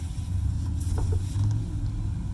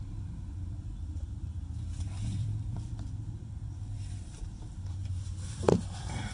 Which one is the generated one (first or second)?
second